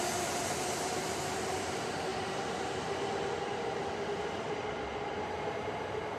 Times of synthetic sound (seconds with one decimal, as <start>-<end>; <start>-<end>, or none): none